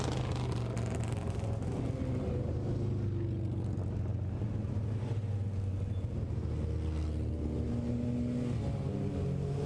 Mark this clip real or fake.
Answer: real